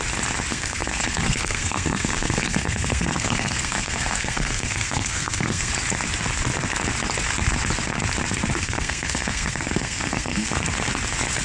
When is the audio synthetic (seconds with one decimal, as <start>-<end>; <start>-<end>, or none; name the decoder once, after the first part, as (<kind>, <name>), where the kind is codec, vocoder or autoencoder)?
0.5-5.7 (codec, SNAC); 8.6-10.5

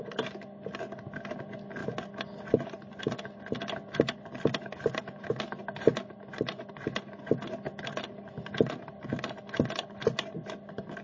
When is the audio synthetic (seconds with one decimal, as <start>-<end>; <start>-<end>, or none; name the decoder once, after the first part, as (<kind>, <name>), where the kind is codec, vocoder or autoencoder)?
none

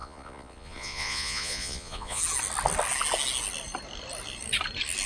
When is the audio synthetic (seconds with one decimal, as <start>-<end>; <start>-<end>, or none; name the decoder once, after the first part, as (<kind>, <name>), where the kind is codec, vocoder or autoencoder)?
0.0-2.2 (vocoder, Vocos)

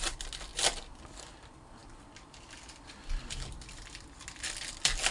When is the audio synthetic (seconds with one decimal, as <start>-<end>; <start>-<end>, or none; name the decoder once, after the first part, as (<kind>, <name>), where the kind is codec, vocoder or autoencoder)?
none

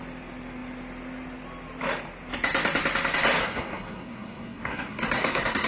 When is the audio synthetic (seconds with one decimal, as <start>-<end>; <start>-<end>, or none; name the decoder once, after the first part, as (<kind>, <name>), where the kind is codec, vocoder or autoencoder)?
3.4-5.7 (codec, SNAC)

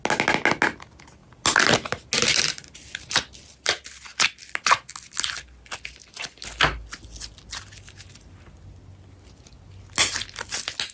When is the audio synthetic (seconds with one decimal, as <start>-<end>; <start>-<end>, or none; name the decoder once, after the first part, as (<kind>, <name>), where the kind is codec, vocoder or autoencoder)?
none

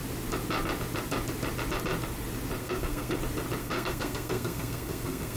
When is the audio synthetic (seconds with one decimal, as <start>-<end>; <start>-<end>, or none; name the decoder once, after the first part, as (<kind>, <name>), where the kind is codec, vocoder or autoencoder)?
2.6-3.2 (codec, SNAC); 3.6-5.4

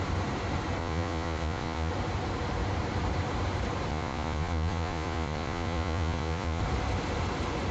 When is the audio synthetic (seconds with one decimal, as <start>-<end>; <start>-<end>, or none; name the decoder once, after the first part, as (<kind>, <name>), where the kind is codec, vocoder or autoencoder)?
0.8-1.9 (vocoder, Vocos); 3.9-6.6